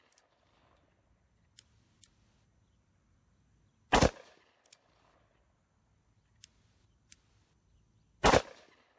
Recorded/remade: recorded